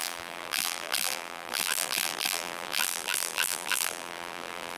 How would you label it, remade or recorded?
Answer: remade